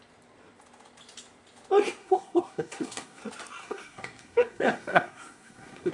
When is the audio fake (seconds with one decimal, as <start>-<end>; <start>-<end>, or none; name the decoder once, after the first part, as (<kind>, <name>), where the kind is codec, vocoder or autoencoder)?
2.0-3.2 (codec, SNAC); 3.6-5.9